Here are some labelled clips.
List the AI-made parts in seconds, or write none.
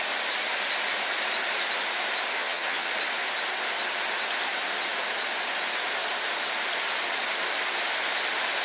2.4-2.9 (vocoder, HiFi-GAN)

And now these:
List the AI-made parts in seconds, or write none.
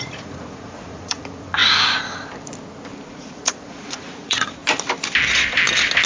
0.0-1.6 (vocoder, Vocos); 3.1-4.6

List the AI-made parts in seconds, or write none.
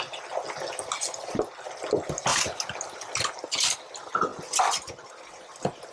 none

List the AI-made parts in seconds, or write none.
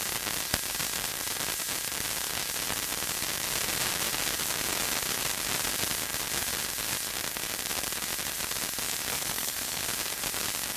9.1-9.8 (codec, SNAC)